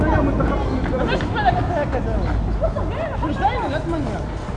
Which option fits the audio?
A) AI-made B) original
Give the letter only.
B